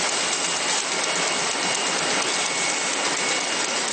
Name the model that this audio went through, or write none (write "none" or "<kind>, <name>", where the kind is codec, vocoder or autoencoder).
none